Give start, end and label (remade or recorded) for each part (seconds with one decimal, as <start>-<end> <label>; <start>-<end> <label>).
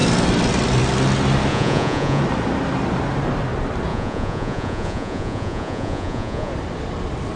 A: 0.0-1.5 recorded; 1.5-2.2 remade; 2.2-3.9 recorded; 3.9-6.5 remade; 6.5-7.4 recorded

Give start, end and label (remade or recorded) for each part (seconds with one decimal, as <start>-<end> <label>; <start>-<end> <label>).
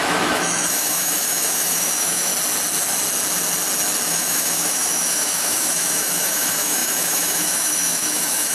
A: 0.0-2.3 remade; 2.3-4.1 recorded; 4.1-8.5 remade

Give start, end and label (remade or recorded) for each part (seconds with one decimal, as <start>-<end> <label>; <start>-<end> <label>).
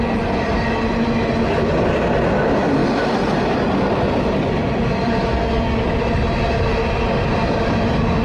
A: 0.0-8.2 recorded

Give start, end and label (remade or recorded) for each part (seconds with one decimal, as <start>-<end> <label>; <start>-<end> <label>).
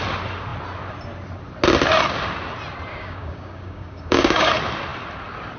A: 0.0-2.9 recorded; 2.9-4.5 remade; 4.5-5.6 recorded